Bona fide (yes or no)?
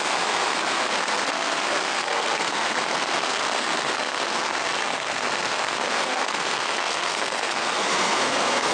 no